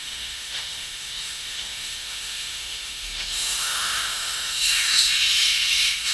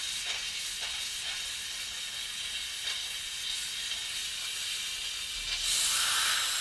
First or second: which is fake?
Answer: first